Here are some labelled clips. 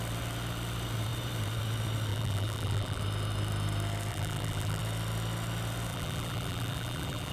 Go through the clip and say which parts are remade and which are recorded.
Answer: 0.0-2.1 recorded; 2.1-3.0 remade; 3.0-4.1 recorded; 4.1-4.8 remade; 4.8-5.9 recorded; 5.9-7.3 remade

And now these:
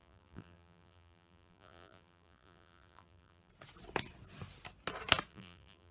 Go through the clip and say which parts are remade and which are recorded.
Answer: 0.0-3.5 remade; 3.5-5.3 recorded; 5.3-5.9 remade

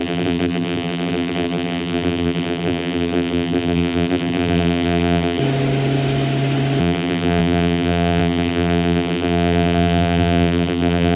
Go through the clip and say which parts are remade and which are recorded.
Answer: 0.0-5.4 remade; 5.4-6.8 recorded; 6.8-11.2 remade

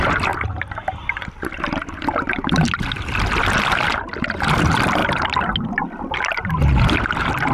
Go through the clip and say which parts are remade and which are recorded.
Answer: 0.0-7.5 recorded

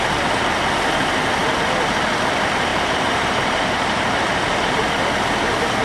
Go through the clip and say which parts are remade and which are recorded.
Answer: 0.0-2.7 recorded; 2.7-4.1 remade; 4.1-5.8 recorded

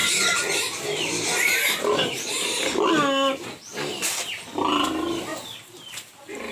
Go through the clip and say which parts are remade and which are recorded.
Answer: 0.0-2.9 remade; 2.9-6.5 recorded

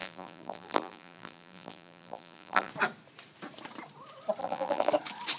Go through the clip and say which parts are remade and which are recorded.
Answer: 0.0-2.7 remade; 2.7-4.4 recorded; 4.4-4.9 remade; 4.9-5.4 recorded